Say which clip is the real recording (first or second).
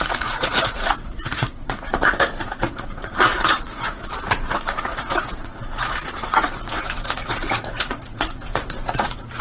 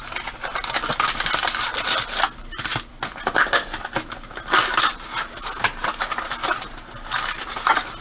second